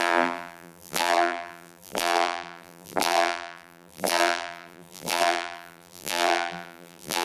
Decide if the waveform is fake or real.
fake